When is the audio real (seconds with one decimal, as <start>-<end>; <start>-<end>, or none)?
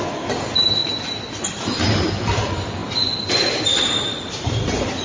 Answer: 0.0-5.0